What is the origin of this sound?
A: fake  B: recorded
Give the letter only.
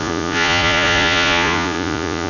A